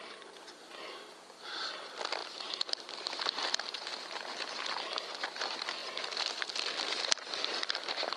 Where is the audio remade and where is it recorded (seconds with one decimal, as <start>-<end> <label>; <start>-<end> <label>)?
0.0-8.2 recorded